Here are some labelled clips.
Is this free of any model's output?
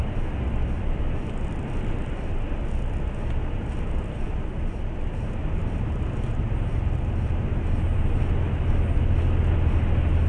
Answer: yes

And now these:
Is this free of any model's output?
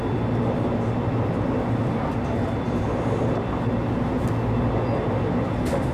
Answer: yes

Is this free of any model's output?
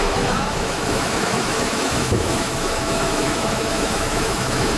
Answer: no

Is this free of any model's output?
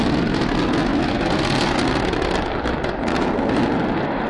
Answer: yes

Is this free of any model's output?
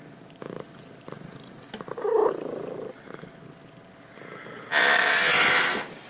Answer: yes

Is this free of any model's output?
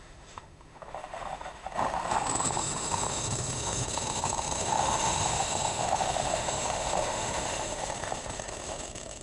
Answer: no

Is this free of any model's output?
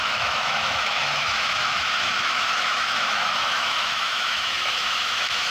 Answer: no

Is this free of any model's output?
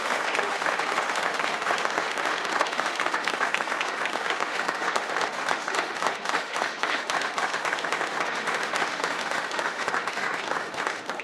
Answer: no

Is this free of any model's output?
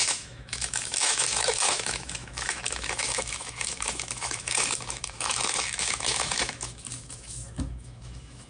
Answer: no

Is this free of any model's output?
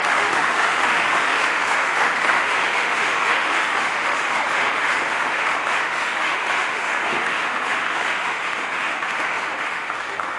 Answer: no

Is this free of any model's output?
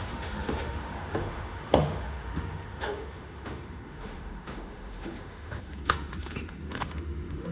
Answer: no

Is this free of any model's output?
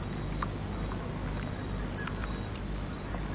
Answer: yes